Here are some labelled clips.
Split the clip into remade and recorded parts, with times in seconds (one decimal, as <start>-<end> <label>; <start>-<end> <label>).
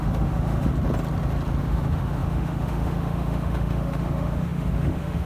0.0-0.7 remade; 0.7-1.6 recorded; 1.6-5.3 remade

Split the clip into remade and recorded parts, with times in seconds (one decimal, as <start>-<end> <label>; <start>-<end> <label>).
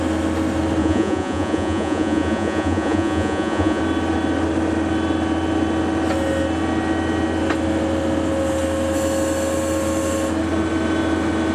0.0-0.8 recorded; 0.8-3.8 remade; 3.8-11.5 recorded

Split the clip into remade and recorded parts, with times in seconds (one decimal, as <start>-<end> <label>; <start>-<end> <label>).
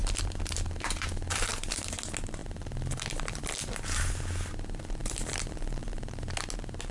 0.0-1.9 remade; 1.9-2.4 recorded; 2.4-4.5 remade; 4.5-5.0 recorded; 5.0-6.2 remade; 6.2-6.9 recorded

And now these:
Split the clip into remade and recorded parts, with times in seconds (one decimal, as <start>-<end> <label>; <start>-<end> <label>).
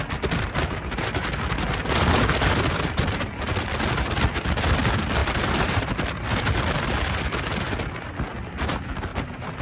0.0-5.2 recorded; 5.2-5.9 remade; 5.9-9.1 recorded; 9.1-9.6 remade